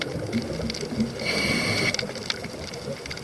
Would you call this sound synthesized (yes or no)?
no